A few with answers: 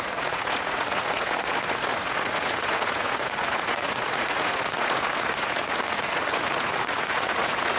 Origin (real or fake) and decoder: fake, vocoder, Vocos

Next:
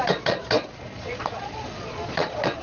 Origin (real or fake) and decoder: fake, vocoder, Vocos